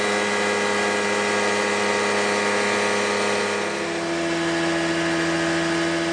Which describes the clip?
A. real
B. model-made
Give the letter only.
A